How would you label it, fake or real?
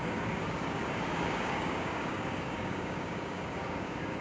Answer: fake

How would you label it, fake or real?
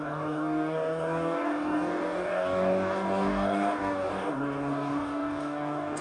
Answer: fake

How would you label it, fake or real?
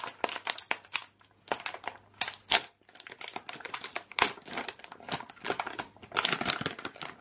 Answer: real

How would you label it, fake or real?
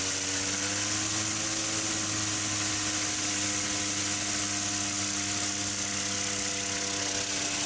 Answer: real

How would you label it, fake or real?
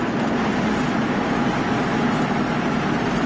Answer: real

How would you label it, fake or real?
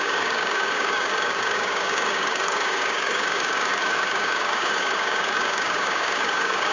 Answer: fake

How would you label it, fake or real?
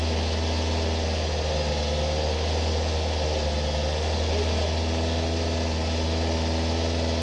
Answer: real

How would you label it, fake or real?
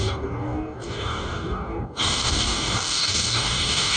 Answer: fake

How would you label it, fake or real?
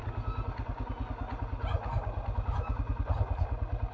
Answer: real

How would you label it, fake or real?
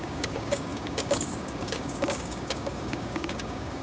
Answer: fake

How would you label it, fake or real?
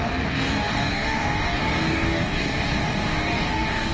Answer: fake